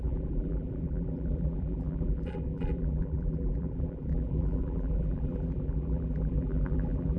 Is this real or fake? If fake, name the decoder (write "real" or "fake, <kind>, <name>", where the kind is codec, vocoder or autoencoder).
fake, vocoder, BigVGAN v2